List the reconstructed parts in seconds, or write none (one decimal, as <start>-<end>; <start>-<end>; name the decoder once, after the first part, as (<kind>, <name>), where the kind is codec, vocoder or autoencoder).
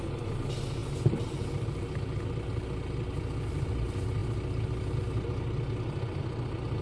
none